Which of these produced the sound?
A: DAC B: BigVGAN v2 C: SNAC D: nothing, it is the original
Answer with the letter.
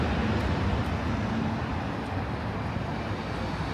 D